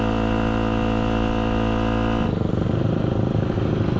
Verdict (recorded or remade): recorded